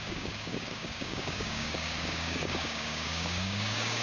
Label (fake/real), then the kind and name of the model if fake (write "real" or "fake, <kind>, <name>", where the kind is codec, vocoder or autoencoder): fake, codec, DAC